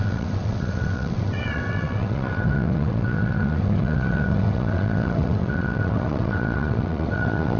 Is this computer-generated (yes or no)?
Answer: yes